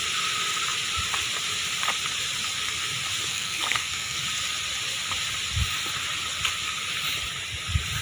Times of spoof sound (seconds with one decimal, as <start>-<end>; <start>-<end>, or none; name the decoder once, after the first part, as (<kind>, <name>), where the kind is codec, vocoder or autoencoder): 3.3-4.2 (codec, SNAC)